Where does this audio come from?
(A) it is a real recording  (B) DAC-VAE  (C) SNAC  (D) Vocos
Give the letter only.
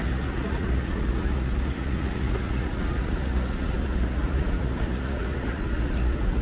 D